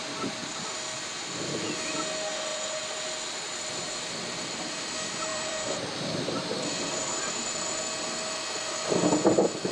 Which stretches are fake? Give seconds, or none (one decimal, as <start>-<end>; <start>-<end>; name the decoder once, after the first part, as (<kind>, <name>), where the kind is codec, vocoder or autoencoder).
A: 0.4-1.4 (vocoder, BigVGAN v2); 5.3-7.5